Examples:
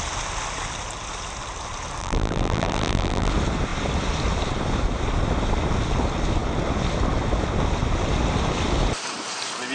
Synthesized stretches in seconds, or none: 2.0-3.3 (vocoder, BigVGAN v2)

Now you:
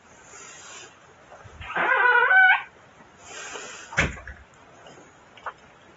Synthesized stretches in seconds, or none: 1.3-2.1 (vocoder, BigVGAN v2); 3.2-4.6

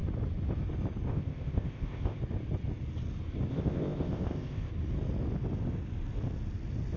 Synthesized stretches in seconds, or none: 1.1-2.2 (codec, ZipCodec); 3.5-4.7

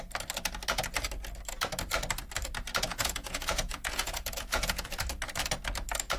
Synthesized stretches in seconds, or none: 2.9-5.0 (vocoder, Vocos)

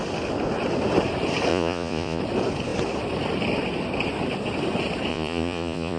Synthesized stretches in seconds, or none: 1.5-2.2 (vocoder, Vocos); 5.1-6.0

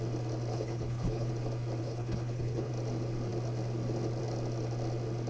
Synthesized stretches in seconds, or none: 0.5-1.3 (codec, HILCodec); 1.8-2.7